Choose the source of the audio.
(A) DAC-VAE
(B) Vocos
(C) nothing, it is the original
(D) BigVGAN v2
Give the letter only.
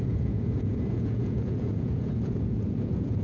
B